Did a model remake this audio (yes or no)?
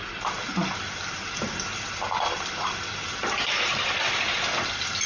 no